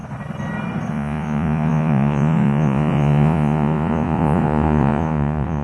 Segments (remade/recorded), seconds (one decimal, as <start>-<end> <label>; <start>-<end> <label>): 0.0-0.9 recorded; 0.9-5.6 remade